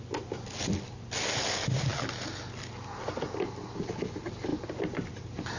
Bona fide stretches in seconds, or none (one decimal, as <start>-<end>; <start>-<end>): 0.0-5.6